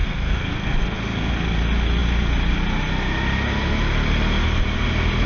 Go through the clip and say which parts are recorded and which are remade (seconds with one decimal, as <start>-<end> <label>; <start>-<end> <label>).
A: 0.0-1.3 remade; 1.3-5.3 recorded